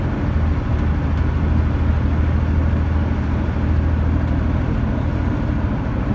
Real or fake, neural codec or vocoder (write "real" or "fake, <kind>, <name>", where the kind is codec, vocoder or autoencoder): real